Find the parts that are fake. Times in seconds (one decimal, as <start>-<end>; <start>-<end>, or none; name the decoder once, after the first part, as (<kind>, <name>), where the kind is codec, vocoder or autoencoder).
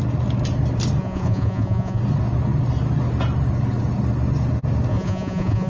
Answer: 1.0-2.0 (vocoder, Vocos); 4.9-5.7